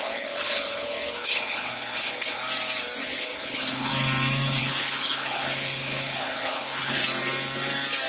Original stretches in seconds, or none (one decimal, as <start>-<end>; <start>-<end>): 2.4-3.0; 3.9-4.6; 7.0-8.1